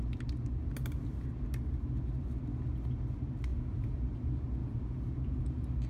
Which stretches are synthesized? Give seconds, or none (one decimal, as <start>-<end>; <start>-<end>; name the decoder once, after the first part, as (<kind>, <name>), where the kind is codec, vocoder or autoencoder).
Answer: 3.5-4.0 (vocoder, Vocos); 4.6-5.4